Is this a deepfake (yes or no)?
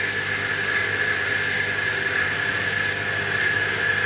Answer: no